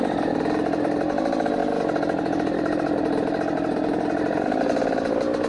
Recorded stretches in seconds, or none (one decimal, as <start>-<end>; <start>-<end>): 0.0-5.5